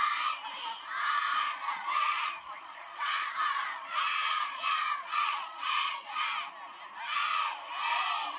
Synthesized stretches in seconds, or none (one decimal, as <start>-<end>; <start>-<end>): 1.3-6.2